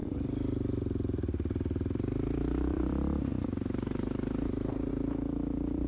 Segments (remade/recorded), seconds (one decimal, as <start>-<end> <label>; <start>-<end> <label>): 0.0-5.9 remade